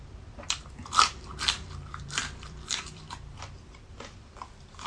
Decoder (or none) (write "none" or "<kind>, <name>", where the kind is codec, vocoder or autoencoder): vocoder, BigVGAN v2